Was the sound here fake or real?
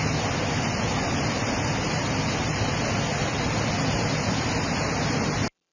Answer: real